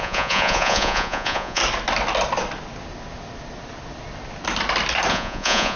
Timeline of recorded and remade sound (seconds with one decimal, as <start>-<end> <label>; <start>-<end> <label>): 0.0-1.6 remade; 1.6-5.1 recorded; 5.1-5.8 remade

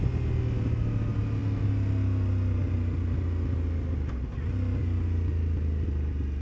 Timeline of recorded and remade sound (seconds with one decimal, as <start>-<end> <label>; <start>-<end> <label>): 0.0-6.4 recorded

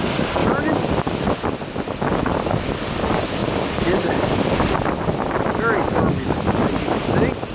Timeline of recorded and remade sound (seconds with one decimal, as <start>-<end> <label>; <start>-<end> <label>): 0.0-0.4 recorded; 0.4-1.0 remade; 1.0-7.5 recorded

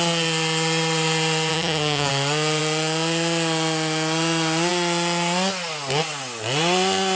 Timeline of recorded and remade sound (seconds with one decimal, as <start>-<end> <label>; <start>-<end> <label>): 0.0-1.5 recorded; 1.5-2.1 remade; 2.1-7.2 recorded

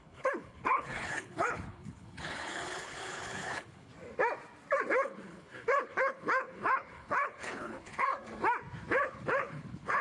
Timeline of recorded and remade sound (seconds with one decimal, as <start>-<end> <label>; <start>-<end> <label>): 0.0-3.9 remade; 3.9-4.9 recorded; 4.9-8.1 remade; 8.1-8.9 recorded; 8.9-10.0 remade

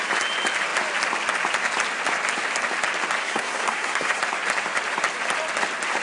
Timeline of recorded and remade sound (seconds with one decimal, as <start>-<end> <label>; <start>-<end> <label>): 0.0-3.2 recorded; 3.2-4.2 remade; 4.2-6.0 recorded